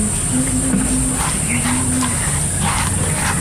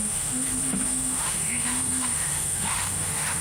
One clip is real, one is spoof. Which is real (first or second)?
first